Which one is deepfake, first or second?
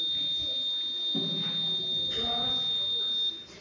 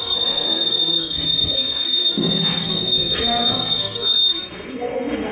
second